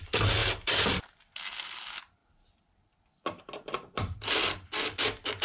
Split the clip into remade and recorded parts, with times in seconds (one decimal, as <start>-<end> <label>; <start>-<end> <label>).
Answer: 0.0-5.4 recorded

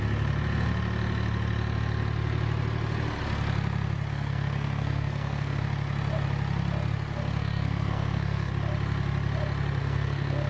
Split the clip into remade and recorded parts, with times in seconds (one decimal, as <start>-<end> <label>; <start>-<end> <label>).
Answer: 0.0-4.1 recorded; 4.1-5.6 remade; 5.6-7.4 recorded; 7.4-8.5 remade; 8.5-9.8 recorded; 9.8-10.5 remade

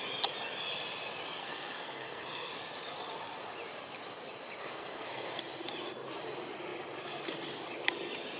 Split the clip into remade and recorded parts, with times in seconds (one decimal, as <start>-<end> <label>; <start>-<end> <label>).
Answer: 0.0-1.4 recorded; 1.4-2.5 remade; 2.5-4.6 recorded; 4.6-5.4 remade; 5.4-8.4 recorded

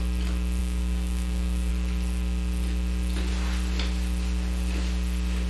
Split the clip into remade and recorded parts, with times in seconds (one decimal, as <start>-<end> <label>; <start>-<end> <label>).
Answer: 0.0-0.6 recorded; 0.6-1.7 remade; 1.7-5.5 recorded

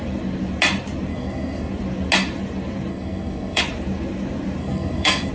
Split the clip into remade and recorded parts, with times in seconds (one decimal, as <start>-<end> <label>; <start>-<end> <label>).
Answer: 0.0-1.1 recorded; 1.1-1.7 remade; 1.7-2.9 recorded; 2.9-3.6 remade; 3.6-4.6 recorded; 4.6-5.3 remade